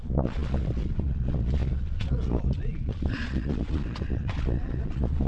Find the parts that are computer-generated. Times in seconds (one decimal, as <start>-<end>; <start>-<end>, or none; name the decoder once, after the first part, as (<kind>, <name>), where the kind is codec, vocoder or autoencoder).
0.0-5.3 (vocoder, Vocos)